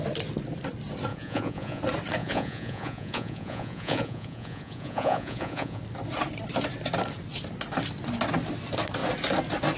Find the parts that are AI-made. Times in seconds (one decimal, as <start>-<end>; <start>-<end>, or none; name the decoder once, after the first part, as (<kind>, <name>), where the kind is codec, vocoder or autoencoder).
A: 1.1-1.8 (vocoder, Vocos); 2.2-5.8